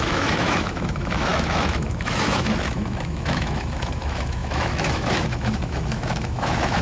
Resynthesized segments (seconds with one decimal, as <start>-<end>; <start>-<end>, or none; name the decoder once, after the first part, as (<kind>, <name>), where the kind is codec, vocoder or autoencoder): 0.0-6.8 (autoencoder, DAC-VAE)